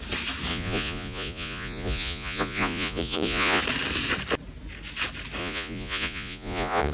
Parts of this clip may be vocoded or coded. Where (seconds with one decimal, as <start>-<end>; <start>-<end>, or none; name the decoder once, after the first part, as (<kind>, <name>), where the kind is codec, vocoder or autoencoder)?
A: 0.5-3.6 (vocoder, Vocos); 5.4-6.9

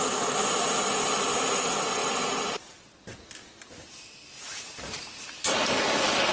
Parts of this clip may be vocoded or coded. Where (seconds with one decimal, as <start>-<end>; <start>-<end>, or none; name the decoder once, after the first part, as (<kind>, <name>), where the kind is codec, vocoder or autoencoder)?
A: none

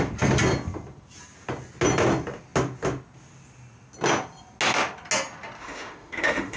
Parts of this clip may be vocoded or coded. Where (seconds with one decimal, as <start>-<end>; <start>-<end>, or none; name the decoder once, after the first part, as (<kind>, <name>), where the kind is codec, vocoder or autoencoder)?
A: 5.6-6.6 (autoencoder, DAC-VAE)

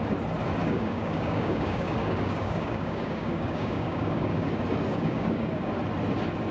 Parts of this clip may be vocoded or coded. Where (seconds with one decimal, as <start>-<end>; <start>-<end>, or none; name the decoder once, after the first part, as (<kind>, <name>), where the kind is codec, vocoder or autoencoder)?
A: 0.6-4.5 (codec, DAC); 4.9-5.7

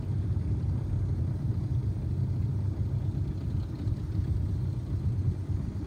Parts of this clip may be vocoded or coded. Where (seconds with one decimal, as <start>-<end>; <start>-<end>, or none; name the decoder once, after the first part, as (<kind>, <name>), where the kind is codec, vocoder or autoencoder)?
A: none